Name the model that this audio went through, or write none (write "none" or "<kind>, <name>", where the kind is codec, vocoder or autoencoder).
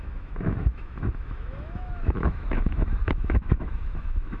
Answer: autoencoder, DAC-VAE